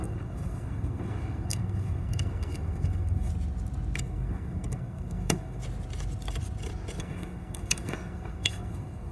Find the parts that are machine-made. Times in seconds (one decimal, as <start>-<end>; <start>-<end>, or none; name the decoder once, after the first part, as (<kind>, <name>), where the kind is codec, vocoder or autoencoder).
0.0-3.3 (codec, SNAC); 4.0-5.6; 7.0-9.1